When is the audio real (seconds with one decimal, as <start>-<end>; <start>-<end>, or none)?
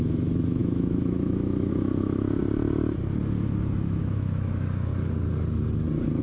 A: 2.4-4.0; 4.9-6.2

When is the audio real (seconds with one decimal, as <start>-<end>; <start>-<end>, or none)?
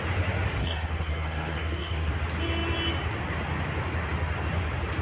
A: 0.0-0.6; 2.1-5.0